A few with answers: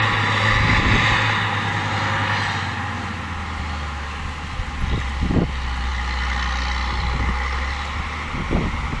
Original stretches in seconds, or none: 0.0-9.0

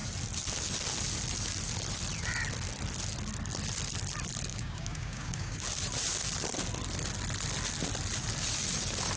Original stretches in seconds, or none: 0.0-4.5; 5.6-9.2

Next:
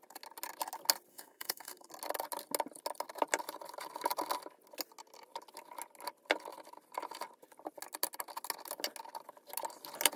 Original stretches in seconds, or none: 0.0-1.1; 1.9-10.2